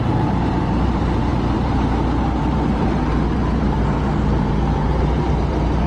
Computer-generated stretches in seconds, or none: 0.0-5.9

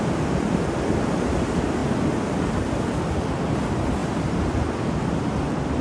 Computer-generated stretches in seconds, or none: 0.0-5.8

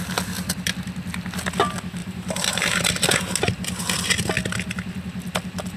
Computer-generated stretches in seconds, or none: 2.0-2.8

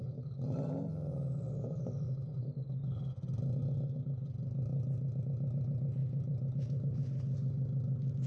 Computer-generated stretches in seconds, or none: 1.1-2.4; 4.7-5.2; 6.0-7.0

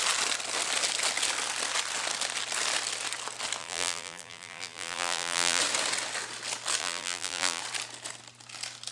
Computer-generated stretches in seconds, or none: 3.6-5.6; 6.8-7.6